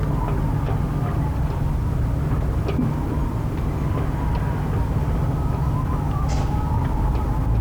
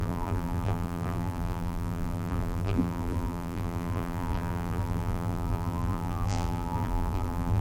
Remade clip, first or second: second